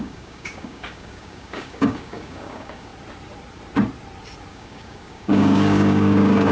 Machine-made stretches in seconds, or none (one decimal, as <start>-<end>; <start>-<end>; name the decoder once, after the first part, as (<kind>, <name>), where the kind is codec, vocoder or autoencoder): 0.0-2.9 (codec, DAC); 4.5-6.5